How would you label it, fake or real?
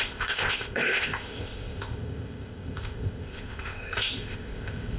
fake